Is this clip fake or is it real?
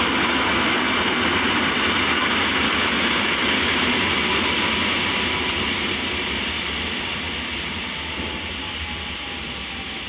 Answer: real